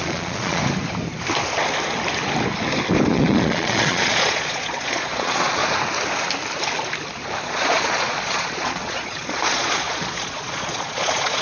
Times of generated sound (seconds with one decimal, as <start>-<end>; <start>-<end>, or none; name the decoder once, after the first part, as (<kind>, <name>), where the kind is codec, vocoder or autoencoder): 0.0-0.6 (vocoder, Vocos); 3.1-5.6; 7.4-11.4